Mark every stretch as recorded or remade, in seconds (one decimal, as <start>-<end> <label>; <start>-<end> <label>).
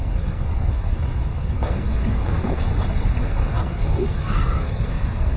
0.0-2.7 remade; 2.7-3.2 recorded; 3.2-5.4 remade